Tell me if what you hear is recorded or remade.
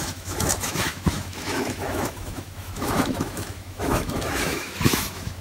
remade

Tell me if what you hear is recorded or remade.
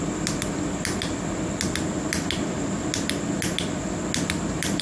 recorded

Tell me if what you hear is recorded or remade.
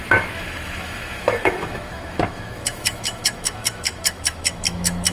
remade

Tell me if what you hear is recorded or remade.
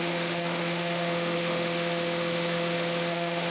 remade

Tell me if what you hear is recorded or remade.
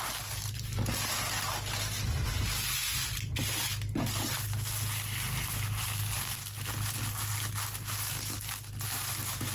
recorded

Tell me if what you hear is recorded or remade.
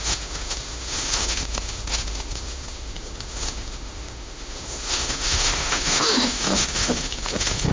remade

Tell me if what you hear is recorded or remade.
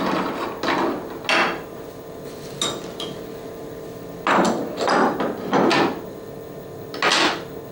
recorded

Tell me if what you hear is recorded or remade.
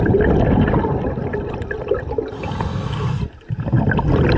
recorded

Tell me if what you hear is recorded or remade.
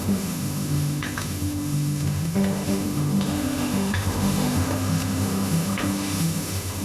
remade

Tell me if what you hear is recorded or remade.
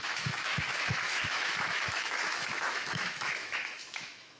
remade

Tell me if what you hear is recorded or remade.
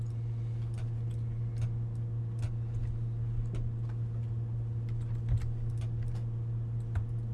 recorded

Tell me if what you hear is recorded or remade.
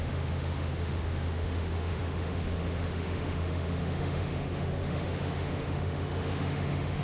remade